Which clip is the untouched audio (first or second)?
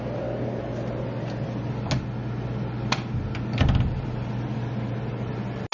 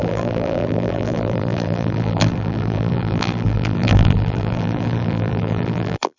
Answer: first